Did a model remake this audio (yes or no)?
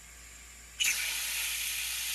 no